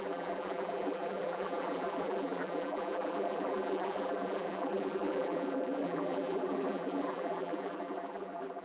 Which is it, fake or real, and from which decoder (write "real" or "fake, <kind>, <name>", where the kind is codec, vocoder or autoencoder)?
fake, vocoder, BigVGAN v2